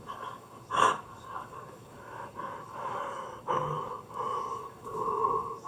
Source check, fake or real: fake